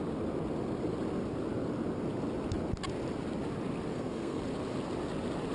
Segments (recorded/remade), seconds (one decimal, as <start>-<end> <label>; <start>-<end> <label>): 0.0-3.9 recorded; 3.9-4.4 remade; 4.4-5.5 recorded